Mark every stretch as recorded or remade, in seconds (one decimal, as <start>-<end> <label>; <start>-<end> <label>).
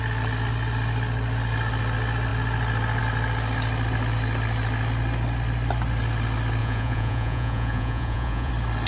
0.0-6.6 recorded; 6.6-8.5 remade; 8.5-8.9 recorded